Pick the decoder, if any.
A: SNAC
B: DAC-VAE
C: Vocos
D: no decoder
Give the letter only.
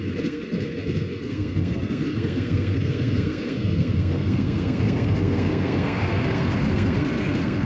A